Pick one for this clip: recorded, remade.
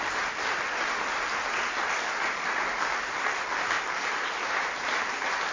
recorded